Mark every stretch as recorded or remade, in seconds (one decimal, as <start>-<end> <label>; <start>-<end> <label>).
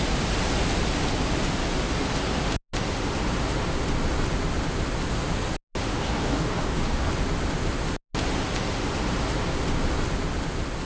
0.0-5.9 recorded; 5.9-7.1 remade; 7.1-10.8 recorded